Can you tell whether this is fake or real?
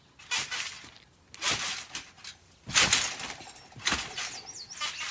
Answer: real